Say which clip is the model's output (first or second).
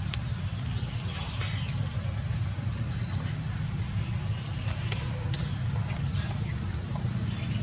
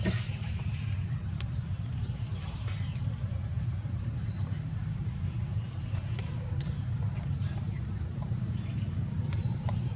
second